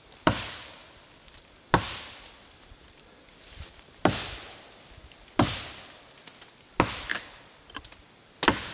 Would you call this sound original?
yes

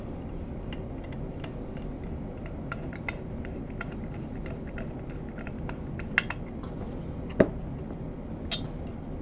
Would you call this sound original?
yes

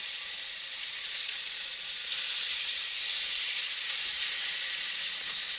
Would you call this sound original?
no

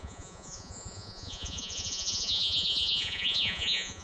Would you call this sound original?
no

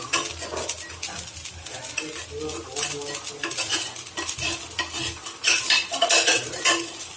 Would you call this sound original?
yes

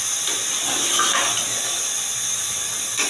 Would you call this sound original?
yes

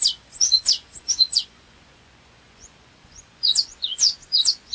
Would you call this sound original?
no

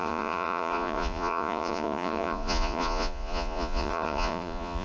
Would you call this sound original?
no